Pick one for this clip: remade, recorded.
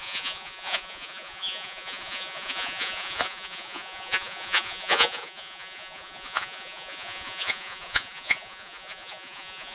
remade